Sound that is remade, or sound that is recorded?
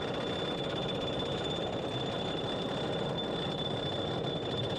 recorded